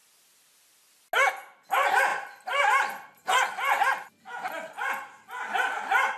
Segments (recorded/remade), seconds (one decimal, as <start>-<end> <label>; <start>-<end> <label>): 0.0-6.2 recorded